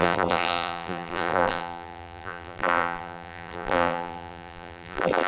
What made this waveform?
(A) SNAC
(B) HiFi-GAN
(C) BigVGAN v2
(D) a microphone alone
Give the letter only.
C